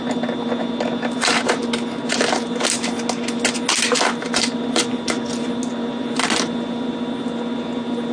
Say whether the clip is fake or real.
real